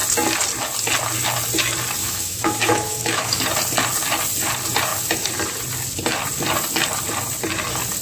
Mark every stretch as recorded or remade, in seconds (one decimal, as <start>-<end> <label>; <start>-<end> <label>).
0.0-2.0 recorded; 2.0-3.4 remade; 3.4-8.0 recorded